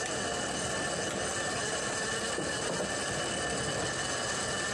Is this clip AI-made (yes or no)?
no